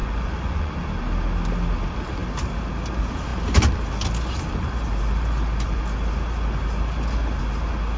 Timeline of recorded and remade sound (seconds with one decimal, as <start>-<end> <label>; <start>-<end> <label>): 0.0-0.7 remade; 0.7-8.0 recorded

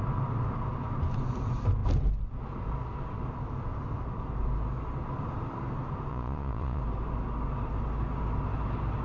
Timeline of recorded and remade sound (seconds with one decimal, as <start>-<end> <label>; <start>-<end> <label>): 0.0-6.1 recorded; 6.1-6.8 remade; 6.8-9.0 recorded

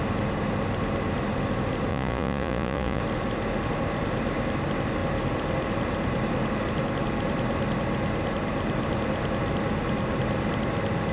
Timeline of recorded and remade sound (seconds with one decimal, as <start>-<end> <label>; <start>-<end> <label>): 0.0-1.9 recorded; 1.9-3.0 remade; 3.0-11.1 recorded

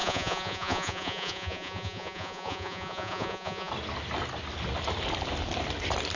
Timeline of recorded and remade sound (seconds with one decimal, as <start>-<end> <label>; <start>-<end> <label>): 0.0-3.7 remade; 3.7-6.2 recorded

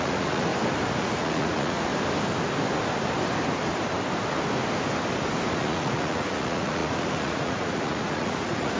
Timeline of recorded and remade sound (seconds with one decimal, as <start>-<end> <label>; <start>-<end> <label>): 0.0-0.5 remade; 0.5-1.0 recorded; 1.0-1.9 remade; 1.9-5.5 recorded; 5.5-8.8 remade

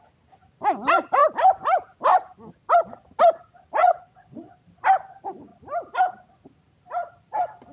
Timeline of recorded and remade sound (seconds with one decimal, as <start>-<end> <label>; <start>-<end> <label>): 0.0-3.8 recorded; 3.8-4.5 remade; 4.5-7.7 recorded